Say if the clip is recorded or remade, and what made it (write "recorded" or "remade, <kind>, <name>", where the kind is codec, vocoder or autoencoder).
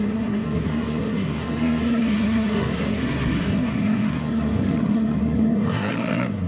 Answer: remade, codec, SNAC